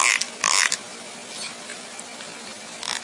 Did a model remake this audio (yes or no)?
no